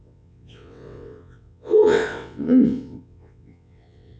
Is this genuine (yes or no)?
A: no